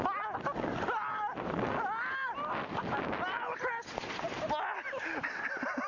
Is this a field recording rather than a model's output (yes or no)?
yes